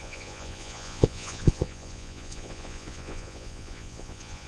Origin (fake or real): fake